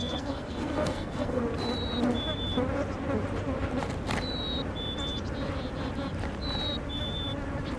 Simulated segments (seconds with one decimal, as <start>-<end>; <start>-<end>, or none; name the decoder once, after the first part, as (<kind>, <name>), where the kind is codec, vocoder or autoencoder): 0.0-1.4 (codec, SNAC)